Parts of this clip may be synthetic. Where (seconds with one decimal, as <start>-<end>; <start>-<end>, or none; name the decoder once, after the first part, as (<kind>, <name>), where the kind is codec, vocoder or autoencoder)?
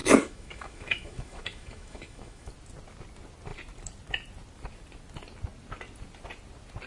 0.0-2.5 (autoencoder, DAC-VAE)